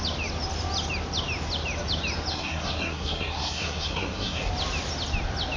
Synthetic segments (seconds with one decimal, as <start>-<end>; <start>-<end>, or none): 2.3-4.5